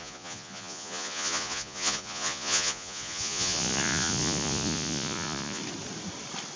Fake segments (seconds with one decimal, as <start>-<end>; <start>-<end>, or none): 0.0-5.6